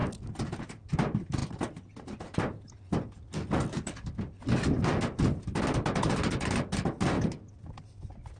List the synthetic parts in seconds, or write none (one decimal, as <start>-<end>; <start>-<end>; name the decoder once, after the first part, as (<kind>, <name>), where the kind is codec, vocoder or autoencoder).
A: none